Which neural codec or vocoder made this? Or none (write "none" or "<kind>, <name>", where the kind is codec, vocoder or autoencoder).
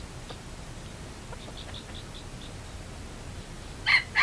none